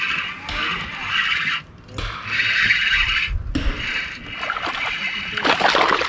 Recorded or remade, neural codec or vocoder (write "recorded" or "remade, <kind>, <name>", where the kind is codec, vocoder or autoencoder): recorded